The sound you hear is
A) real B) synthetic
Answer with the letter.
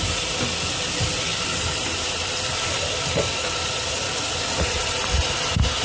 A